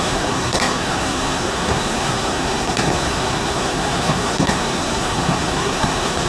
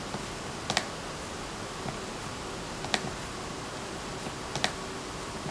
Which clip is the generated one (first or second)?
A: first